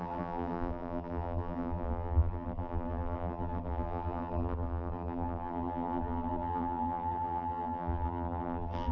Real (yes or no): no